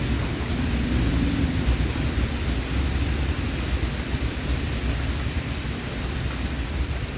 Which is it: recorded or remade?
recorded